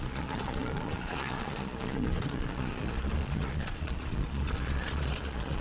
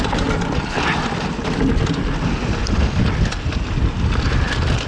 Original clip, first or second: second